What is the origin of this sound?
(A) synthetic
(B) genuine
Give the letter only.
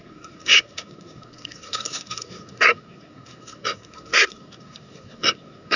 A